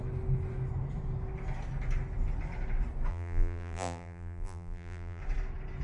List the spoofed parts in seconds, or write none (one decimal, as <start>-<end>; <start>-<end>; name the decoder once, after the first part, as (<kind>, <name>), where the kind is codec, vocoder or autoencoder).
3.1-5.2 (vocoder, BigVGAN v2)